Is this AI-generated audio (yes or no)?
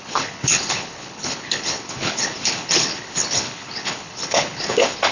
yes